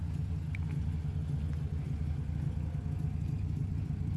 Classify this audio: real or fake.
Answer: real